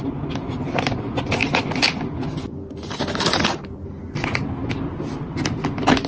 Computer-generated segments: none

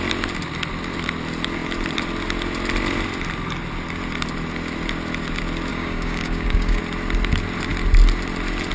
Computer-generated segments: 5.7-6.8 (codec, DAC)

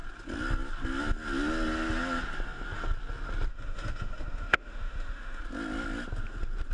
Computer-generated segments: 3.5-5.4 (autoencoder, DAC-VAE)

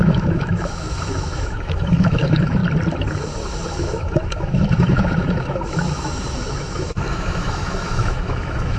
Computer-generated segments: 0.0-2.6 (autoencoder, DAC-VAE); 3.7-8.8